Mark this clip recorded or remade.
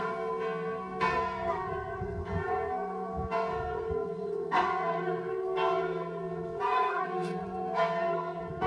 remade